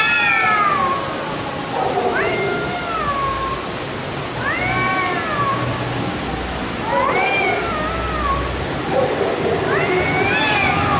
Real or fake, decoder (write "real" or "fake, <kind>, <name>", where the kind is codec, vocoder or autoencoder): real